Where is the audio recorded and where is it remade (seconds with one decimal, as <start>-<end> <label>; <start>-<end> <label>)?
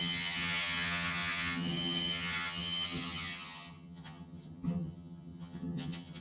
0.0-6.2 remade